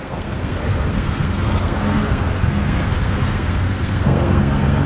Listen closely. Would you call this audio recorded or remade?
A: remade